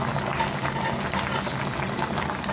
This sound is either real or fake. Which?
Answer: real